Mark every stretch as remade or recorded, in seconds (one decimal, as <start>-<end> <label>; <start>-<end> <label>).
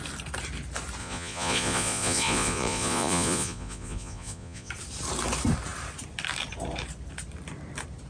0.0-1.0 recorded; 1.0-4.7 remade; 4.7-8.1 recorded